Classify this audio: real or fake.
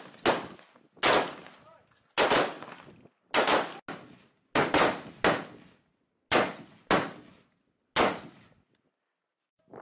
real